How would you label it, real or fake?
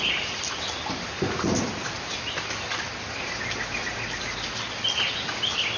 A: real